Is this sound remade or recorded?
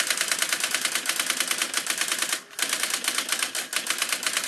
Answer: recorded